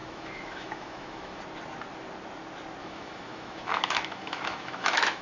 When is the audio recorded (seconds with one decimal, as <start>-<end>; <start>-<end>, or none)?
1.4-2.8